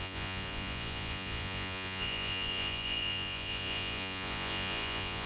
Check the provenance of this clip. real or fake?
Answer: fake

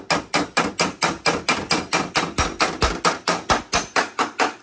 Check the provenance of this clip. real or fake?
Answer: real